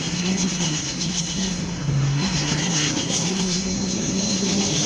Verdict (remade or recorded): remade